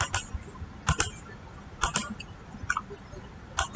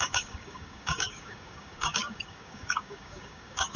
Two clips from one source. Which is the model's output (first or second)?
second